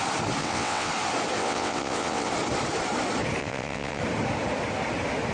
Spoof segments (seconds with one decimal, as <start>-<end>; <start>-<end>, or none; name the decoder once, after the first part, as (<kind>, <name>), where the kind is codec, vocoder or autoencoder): 0.4-0.9 (vocoder, WaveNeXt); 1.4-2.3; 3.4-4.0